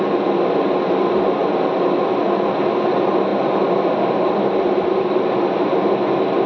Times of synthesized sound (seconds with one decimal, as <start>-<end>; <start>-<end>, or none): none